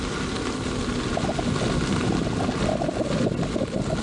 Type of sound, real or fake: real